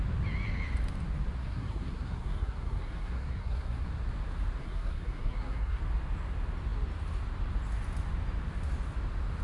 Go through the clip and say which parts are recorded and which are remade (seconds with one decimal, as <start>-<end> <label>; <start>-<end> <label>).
0.0-1.4 recorded; 1.4-3.9 remade; 3.9-4.6 recorded; 4.6-5.8 remade; 5.8-9.4 recorded